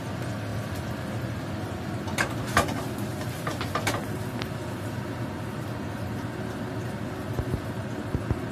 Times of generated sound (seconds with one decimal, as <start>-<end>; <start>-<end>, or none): none